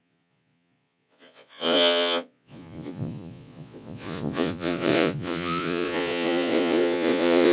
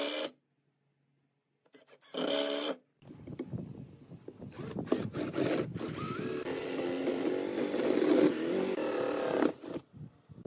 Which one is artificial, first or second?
first